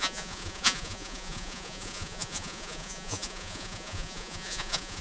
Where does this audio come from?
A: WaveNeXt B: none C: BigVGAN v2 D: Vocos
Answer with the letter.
D